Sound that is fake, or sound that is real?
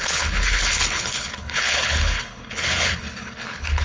fake